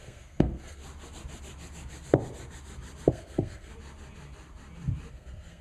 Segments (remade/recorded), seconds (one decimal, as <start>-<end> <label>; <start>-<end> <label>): 0.0-0.8 remade; 0.8-3.1 recorded; 3.1-3.7 remade; 3.7-5.1 recorded; 5.1-5.6 remade